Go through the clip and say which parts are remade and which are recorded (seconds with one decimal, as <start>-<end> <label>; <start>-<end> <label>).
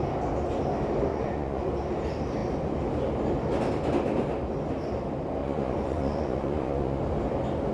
0.0-1.1 recorded; 1.1-1.7 remade; 1.7-5.4 recorded; 5.4-7.0 remade; 7.0-7.7 recorded